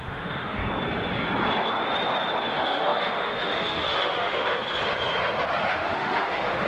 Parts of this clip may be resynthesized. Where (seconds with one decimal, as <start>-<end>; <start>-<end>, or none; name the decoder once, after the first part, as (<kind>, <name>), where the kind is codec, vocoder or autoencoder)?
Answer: 0.0-0.6 (autoencoder, DAC-VAE); 2.5-4.6; 5.7-6.7